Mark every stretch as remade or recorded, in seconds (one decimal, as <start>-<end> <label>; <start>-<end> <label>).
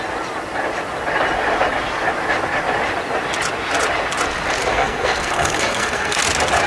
0.0-4.7 recorded; 4.7-6.2 remade; 6.2-6.7 recorded